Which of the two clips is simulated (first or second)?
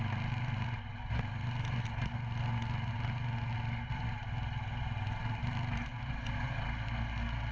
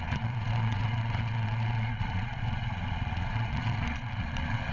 second